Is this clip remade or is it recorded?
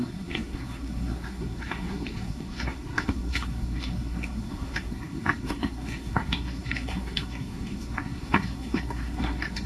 remade